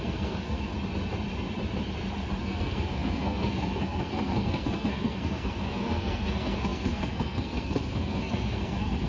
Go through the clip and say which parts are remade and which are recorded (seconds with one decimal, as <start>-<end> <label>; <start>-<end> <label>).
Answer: 0.0-0.7 remade; 0.7-2.4 recorded; 2.4-9.1 remade